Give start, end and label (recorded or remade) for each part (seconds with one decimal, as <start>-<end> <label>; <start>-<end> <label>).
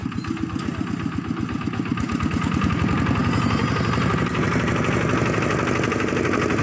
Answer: 0.0-6.6 recorded